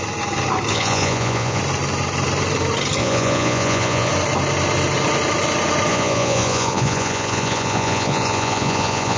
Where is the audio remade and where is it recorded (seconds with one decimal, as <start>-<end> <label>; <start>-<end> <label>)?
0.0-0.7 recorded; 0.7-1.6 remade; 1.6-3.0 recorded; 3.0-4.1 remade; 4.1-5.9 recorded; 5.9-9.2 remade